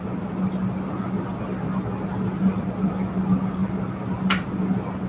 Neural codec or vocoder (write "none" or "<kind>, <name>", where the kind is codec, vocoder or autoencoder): none